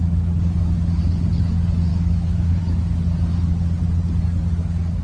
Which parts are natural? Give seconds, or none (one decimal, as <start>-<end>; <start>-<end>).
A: 0.0-1.9; 2.6-5.0